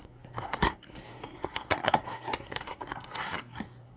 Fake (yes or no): yes